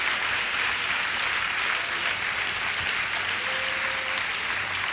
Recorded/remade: recorded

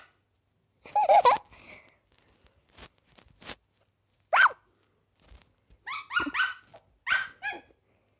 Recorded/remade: recorded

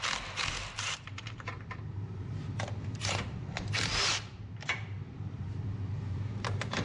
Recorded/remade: remade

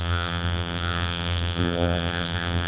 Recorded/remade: remade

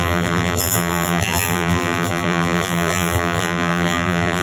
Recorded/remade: remade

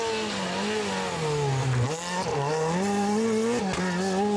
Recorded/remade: recorded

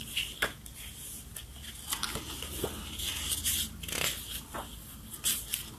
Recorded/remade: recorded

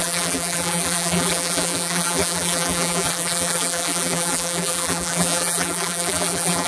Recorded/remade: remade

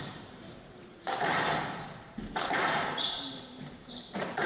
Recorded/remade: remade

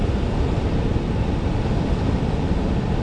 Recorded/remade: recorded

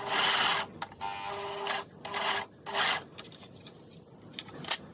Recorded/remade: recorded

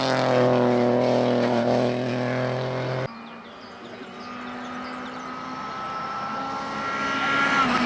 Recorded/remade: recorded